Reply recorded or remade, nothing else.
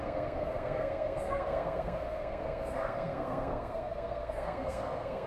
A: remade